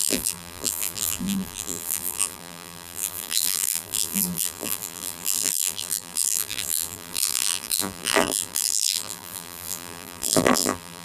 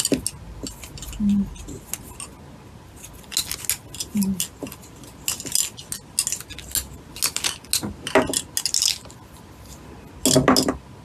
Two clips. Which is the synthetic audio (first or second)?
first